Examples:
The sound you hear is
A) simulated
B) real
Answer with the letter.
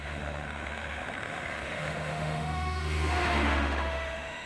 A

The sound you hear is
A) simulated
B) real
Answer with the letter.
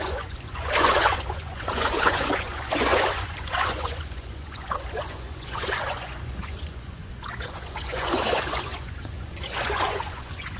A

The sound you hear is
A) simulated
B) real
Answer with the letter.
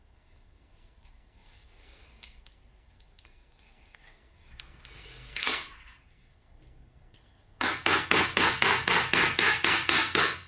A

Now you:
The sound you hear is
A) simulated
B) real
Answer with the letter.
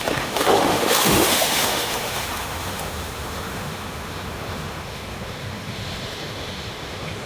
A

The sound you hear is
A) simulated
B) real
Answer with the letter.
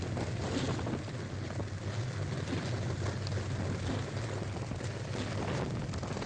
B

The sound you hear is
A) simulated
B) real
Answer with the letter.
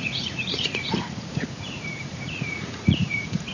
A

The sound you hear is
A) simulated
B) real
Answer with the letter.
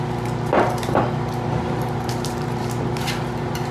B